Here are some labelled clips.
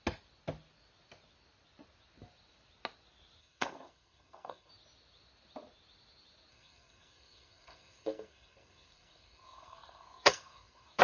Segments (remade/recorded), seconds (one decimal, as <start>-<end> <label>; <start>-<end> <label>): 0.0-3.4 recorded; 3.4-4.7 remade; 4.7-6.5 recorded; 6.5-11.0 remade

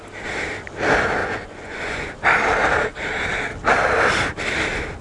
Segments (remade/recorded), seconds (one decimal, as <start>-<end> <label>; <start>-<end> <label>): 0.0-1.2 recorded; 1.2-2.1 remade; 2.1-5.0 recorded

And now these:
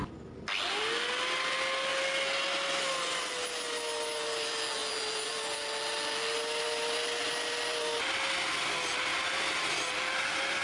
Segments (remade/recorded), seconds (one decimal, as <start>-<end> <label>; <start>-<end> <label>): 0.0-10.6 recorded

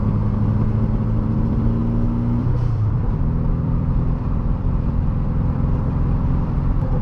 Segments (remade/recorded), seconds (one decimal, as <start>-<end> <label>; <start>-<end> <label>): 0.0-1.8 remade; 1.8-2.4 recorded; 2.4-3.0 remade; 3.0-3.5 recorded; 3.5-7.0 remade

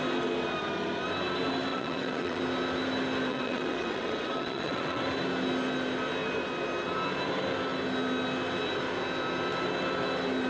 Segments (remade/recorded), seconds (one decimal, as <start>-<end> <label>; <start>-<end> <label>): 0.0-1.7 recorded; 1.7-2.4 remade; 2.4-3.3 recorded; 3.3-5.0 remade; 5.0-10.5 recorded

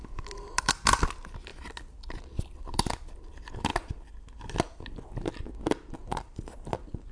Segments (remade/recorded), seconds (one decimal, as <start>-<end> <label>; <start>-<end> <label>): 0.0-7.1 recorded

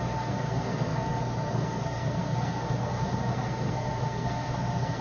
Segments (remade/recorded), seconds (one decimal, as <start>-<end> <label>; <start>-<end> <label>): 0.0-5.0 remade